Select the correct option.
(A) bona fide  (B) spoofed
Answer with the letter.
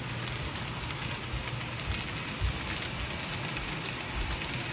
A